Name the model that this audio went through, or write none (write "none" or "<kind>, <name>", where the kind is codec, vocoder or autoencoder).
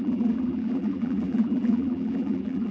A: vocoder, BigVGAN v2